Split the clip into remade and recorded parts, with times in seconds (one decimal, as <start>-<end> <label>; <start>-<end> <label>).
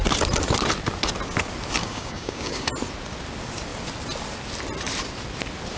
0.0-1.8 recorded; 1.8-2.7 remade; 2.7-5.8 recorded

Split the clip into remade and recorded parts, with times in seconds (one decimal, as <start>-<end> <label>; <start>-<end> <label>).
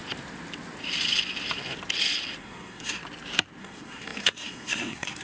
0.0-2.4 recorded; 2.4-3.0 remade; 3.0-3.6 recorded; 3.6-5.2 remade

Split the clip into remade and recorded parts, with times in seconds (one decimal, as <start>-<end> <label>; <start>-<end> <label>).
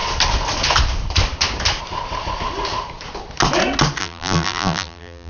0.0-4.0 recorded; 4.0-5.3 remade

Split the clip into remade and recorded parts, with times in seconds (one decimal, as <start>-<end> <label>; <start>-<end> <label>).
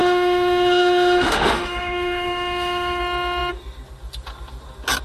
0.0-3.0 remade; 3.0-5.0 recorded